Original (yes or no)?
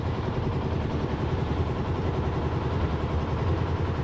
yes